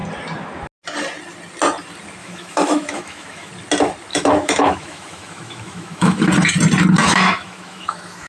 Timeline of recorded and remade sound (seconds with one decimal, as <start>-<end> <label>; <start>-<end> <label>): 0.0-2.2 recorded; 2.2-3.5 remade; 3.5-4.1 recorded; 4.1-6.3 remade; 6.3-7.0 recorded; 7.0-8.3 remade